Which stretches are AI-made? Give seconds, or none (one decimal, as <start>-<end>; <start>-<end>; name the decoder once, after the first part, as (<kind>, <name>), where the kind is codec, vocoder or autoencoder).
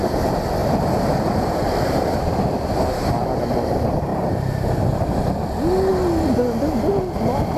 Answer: 0.6-3.4 (vocoder, BigVGAN v2); 4.1-5.1